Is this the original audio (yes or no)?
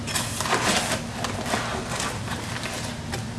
yes